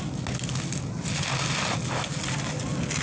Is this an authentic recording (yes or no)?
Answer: yes